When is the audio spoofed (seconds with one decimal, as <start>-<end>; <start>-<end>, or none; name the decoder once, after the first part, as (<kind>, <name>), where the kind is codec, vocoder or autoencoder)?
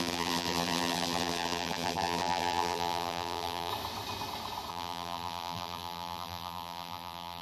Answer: 0.0-3.7 (vocoder, BigVGAN v2); 4.7-7.4